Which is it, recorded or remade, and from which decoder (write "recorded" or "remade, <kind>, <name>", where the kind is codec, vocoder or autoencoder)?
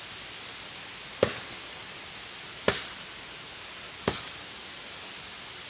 recorded